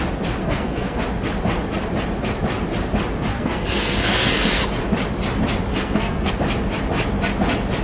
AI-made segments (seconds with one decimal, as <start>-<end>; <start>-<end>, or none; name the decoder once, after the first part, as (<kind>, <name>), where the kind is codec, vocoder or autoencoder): 0.4-1.0 (codec, SNAC); 3.3-4.6; 5.7-6.3